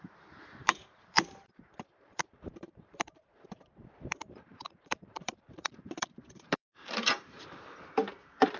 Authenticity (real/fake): fake